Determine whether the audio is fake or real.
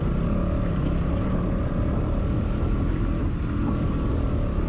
real